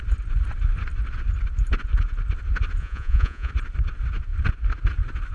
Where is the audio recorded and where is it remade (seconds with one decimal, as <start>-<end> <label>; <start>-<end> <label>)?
0.0-2.8 recorded; 2.8-3.5 remade; 3.5-5.3 recorded